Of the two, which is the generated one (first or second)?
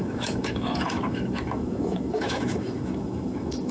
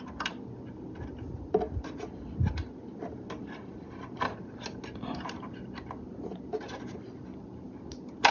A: first